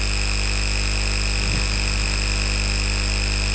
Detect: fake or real real